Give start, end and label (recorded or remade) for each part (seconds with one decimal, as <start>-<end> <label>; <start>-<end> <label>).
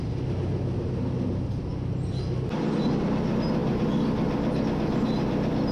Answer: 0.0-5.7 recorded